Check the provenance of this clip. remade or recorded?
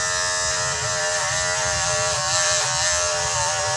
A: recorded